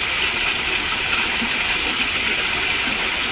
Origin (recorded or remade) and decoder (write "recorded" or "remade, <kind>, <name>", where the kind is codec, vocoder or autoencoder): recorded